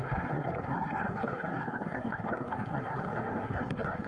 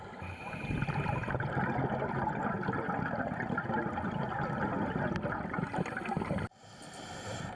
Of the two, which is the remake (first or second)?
first